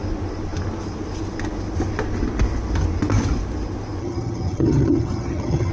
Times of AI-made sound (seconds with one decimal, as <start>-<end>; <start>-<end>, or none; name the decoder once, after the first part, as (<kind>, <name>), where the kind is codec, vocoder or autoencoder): 4.0-5.7 (vocoder, HiFi-GAN)